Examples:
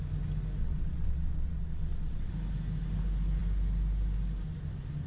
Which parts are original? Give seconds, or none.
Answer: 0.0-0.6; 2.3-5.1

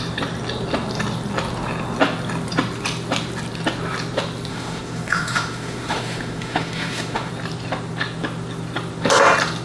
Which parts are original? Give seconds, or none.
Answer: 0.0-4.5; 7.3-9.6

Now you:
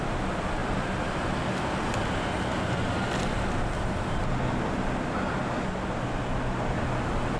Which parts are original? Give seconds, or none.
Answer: 0.0-7.4

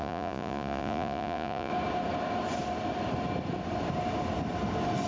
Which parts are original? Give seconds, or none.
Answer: 1.7-5.1

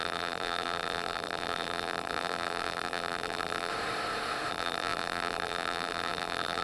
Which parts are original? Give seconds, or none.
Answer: 3.7-4.5